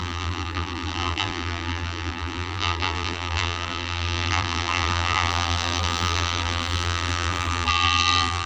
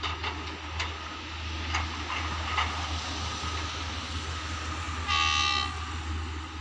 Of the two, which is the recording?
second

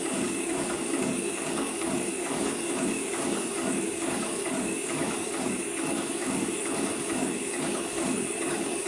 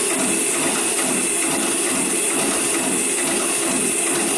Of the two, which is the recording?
second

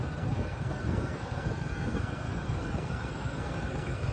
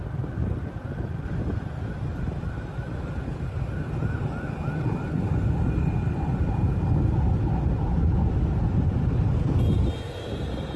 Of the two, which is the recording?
second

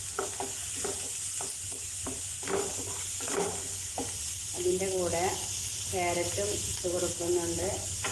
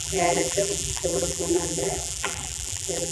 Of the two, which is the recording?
first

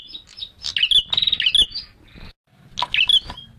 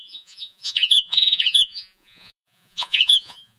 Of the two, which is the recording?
first